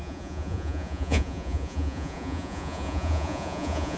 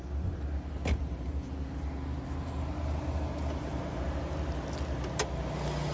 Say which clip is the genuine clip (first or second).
second